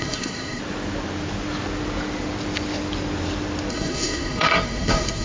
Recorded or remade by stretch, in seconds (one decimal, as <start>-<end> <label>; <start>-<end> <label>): 0.0-0.6 remade; 0.6-3.7 recorded; 3.7-5.2 remade